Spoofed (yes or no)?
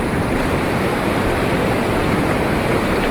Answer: yes